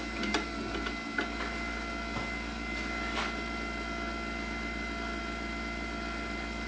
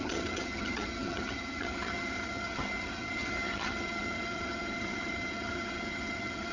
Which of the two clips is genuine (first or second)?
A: first